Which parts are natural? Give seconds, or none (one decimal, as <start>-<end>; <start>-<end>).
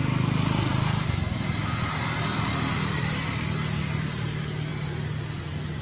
0.0-5.8